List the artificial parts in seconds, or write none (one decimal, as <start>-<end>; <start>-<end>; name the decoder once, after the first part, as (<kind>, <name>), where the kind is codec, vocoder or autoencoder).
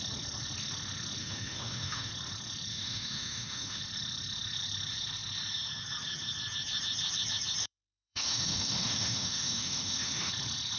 1.2-2.1 (autoencoder, DAC-VAE); 2.7-3.8; 7.6-10.3